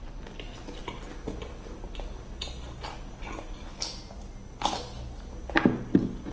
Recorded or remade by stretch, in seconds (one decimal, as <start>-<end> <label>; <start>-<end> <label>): 0.0-6.3 recorded